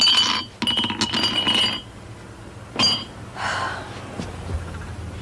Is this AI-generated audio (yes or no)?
no